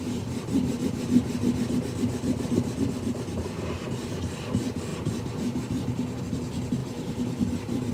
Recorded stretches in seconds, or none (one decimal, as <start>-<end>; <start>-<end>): 0.0-7.9